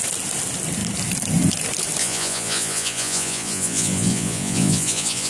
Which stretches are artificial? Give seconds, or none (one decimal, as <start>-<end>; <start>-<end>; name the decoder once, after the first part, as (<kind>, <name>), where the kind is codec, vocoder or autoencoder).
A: 2.0-5.3 (vocoder, Vocos)